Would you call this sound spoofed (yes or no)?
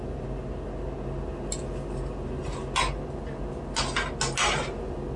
no